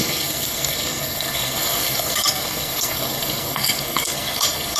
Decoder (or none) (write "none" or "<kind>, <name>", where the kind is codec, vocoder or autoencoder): codec, SNAC